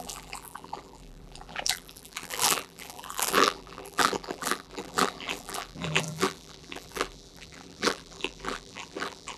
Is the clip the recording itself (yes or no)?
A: no